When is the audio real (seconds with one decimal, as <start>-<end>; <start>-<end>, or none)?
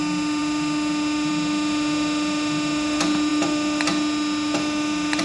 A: 0.0-5.2